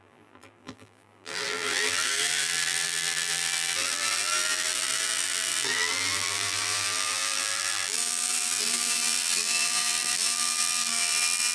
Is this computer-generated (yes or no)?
yes